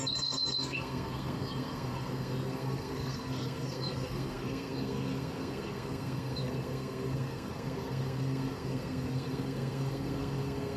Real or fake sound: fake